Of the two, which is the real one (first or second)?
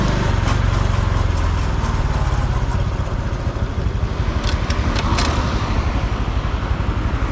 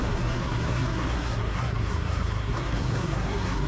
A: first